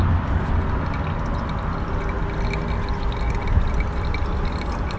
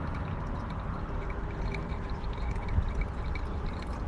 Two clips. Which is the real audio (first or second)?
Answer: first